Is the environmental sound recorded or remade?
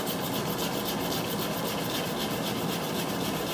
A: recorded